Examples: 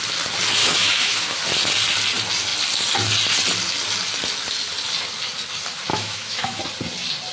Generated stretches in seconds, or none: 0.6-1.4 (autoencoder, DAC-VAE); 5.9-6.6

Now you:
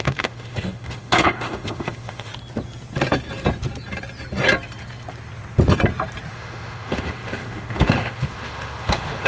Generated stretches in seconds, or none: 0.0-2.3 (autoencoder, DAC-VAE); 6.3-9.3